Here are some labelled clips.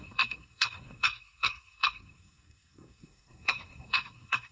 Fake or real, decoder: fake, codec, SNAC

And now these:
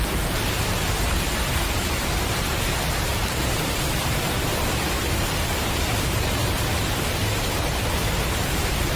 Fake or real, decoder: fake, vocoder, BigVGAN v2